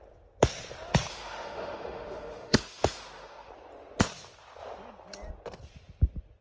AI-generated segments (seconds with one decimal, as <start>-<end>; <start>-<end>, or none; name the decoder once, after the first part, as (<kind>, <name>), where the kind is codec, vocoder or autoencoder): 1.1-3.5 (autoencoder, DAC-VAE)